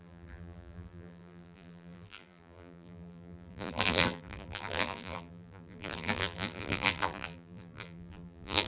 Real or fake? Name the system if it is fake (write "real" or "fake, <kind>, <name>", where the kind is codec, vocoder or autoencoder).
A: fake, vocoder, BigVGAN v2